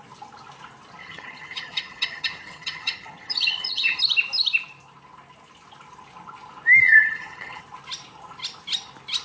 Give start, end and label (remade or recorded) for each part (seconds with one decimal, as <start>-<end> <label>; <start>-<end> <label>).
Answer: 0.0-1.0 recorded; 1.0-4.0 remade; 4.0-6.8 recorded; 6.8-7.6 remade; 7.6-9.2 recorded